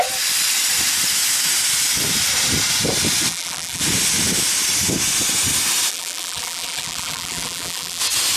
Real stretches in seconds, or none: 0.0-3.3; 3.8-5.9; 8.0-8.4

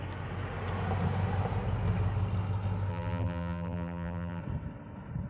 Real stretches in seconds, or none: 0.0-2.9; 4.4-5.3

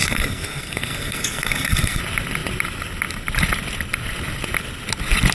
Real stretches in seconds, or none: 2.0-5.3